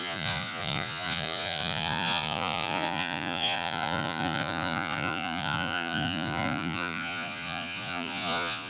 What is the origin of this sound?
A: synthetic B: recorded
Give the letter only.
A